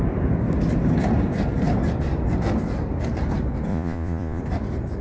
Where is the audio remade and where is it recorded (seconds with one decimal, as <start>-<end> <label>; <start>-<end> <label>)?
0.0-3.7 recorded; 3.7-4.4 remade; 4.4-5.0 recorded